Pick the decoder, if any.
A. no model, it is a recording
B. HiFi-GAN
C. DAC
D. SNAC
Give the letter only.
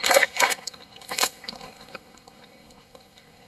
D